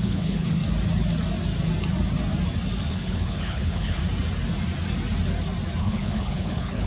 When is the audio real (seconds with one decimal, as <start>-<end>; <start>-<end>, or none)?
0.6-2.9; 4.0-5.8